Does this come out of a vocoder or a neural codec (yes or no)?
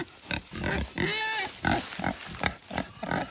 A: no